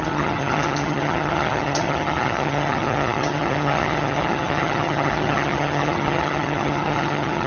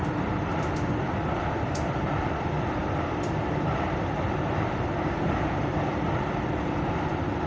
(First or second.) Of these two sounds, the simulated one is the first